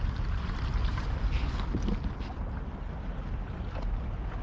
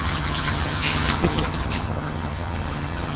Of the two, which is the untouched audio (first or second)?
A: first